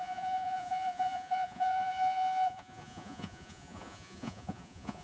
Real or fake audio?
fake